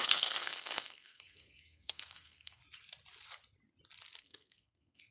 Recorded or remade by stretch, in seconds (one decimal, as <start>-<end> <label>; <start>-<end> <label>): 0.0-2.6 remade; 2.6-4.2 recorded; 4.2-5.1 remade